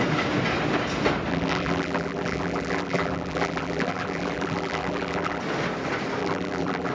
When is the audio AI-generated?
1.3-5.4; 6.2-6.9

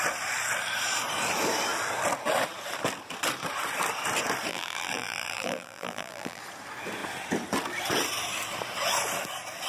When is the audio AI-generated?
4.5-6.4

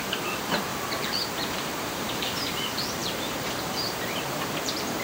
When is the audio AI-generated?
0.0-0.7; 1.4-5.0

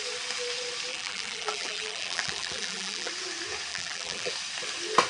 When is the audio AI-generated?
0.9-3.1; 3.7-4.3